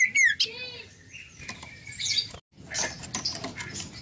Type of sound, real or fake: real